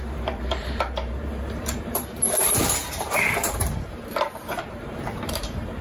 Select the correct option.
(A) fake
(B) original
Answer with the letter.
A